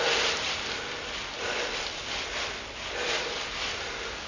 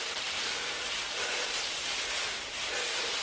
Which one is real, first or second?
first